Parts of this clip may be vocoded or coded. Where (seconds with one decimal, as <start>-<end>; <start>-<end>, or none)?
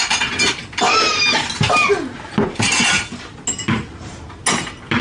none